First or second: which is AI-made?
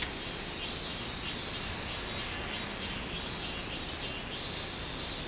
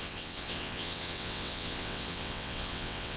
second